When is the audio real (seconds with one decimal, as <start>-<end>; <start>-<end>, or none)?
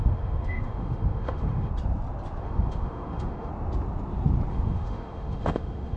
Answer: 1.7-2.4; 3.5-4.5